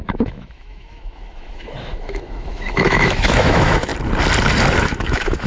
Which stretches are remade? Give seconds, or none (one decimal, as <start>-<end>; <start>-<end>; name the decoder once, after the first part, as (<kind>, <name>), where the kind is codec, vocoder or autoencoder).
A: 0.0-3.9 (autoencoder, DAC-VAE); 4.8-5.5